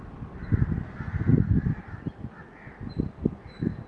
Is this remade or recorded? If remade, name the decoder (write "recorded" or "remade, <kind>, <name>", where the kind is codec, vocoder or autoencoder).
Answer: recorded